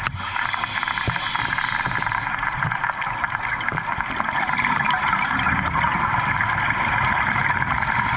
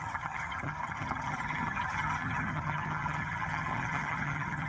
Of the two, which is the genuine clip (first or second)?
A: first